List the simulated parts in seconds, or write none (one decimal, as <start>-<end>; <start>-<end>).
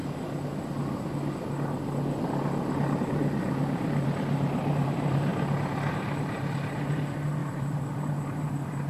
3.0-5.3; 5.9-8.9